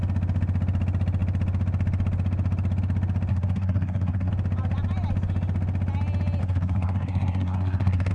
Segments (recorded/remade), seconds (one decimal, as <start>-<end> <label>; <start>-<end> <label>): 0.0-3.3 recorded; 3.3-4.3 remade; 4.3-6.4 recorded; 6.4-8.1 remade